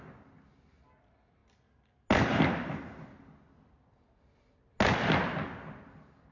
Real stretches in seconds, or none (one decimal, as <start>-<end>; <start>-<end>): 0.0-6.3